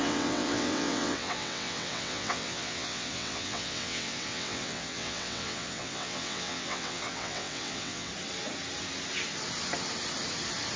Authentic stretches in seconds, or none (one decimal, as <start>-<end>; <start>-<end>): 8.1-10.8